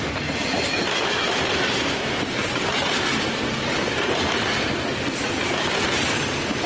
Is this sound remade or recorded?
recorded